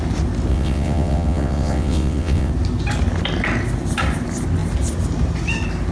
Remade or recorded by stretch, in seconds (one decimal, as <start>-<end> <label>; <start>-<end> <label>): 0.0-0.5 recorded; 0.5-2.5 remade; 2.5-5.9 recorded